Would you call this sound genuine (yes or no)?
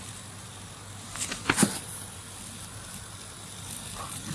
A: yes